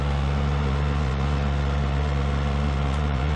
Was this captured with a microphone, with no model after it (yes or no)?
no